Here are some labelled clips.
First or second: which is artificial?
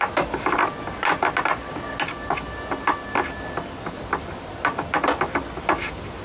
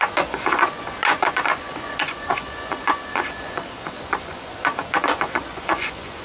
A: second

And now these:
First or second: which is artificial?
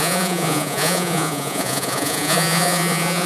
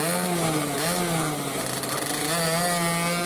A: first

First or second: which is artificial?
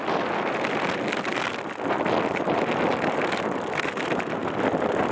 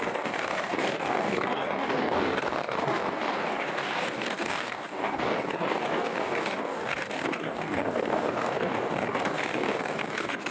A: second